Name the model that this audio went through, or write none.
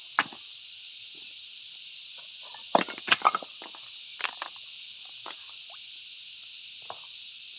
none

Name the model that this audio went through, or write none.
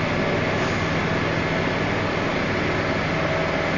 none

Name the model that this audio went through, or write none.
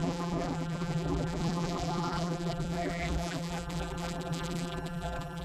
vocoder, BigVGAN v2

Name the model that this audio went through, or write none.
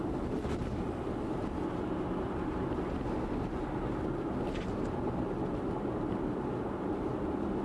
none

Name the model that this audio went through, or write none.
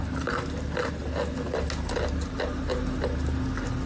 none